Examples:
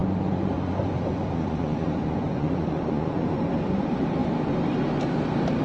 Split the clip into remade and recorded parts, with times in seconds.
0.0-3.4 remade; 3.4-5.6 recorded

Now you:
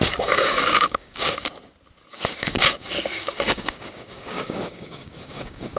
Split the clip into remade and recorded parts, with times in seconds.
0.0-1.5 remade; 1.5-2.1 recorded; 2.1-5.8 remade

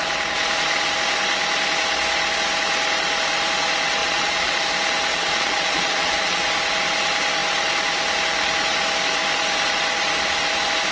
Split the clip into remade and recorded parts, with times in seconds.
0.0-4.0 recorded; 4.0-4.6 remade; 4.6-5.1 recorded; 5.1-6.4 remade; 6.4-10.9 recorded

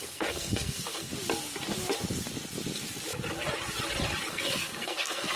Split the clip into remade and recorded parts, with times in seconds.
0.0-1.1 remade; 1.1-4.3 recorded; 4.3-5.4 remade